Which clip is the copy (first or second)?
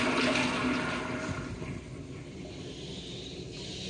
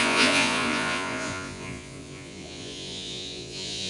second